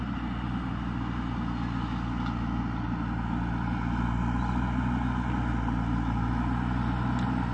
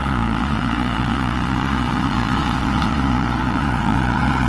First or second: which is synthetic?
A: second